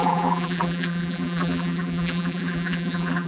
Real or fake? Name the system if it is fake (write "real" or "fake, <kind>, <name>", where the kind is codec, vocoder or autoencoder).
fake, vocoder, BigVGAN v2